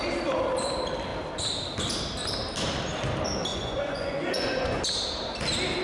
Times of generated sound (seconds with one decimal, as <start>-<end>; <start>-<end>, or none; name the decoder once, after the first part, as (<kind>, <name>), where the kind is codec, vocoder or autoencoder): 3.5-4.8 (vocoder, Vocos)